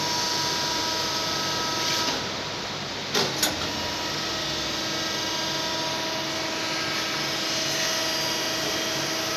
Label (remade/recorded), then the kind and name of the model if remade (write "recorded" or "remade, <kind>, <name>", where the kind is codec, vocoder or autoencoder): recorded